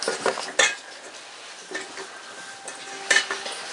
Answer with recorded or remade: recorded